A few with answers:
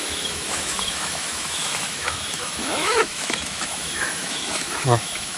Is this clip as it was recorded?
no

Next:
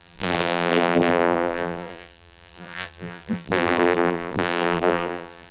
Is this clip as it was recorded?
no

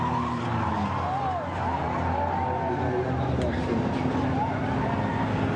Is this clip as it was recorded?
yes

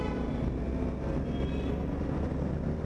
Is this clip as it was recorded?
yes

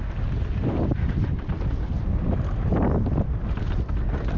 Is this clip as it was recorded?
yes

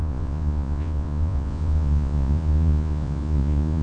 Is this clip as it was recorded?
no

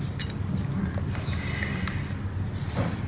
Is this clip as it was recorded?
yes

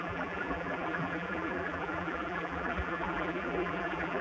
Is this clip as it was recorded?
no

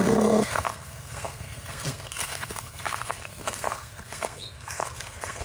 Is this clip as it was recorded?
no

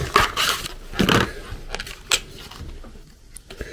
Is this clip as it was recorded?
yes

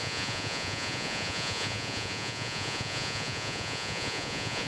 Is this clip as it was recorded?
no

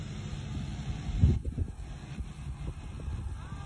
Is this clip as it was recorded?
yes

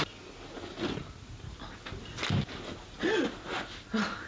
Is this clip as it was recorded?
yes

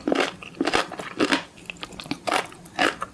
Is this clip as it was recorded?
yes